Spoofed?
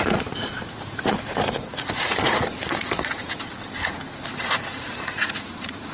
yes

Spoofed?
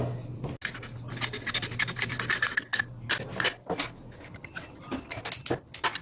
no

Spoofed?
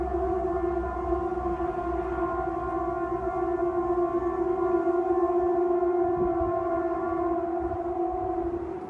no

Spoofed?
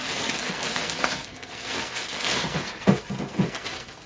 yes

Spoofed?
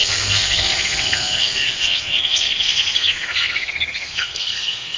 yes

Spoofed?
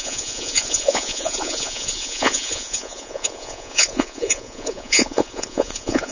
yes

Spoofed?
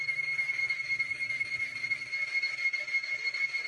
no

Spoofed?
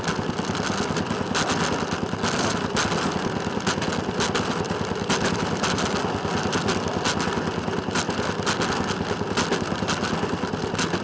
no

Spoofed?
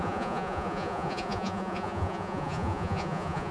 yes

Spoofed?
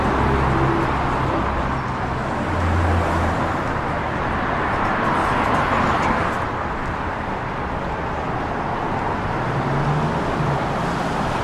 no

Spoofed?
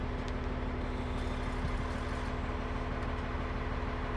no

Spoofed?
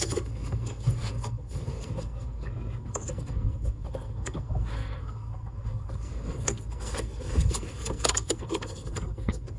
yes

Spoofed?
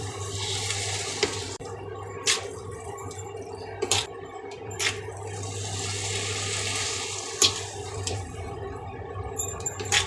yes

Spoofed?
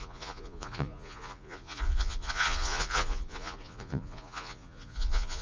yes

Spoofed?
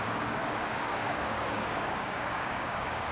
yes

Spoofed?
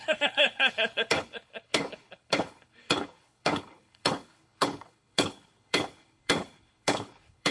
yes